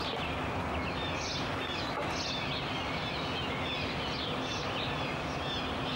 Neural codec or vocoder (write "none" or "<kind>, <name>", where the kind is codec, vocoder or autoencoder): none